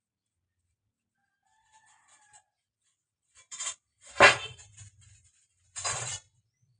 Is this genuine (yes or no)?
no